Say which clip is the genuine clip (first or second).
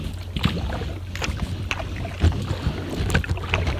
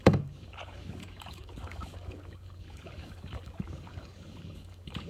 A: first